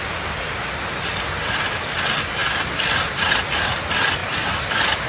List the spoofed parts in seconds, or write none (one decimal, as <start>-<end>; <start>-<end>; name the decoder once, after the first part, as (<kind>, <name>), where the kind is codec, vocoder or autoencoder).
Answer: none